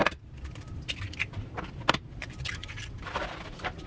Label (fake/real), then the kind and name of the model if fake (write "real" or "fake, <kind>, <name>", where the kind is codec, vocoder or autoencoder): real